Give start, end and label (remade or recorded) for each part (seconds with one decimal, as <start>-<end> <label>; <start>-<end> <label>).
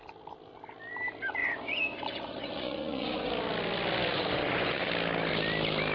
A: 0.0-1.4 recorded; 1.4-3.3 remade; 3.3-4.1 recorded; 4.1-4.9 remade; 4.9-5.9 recorded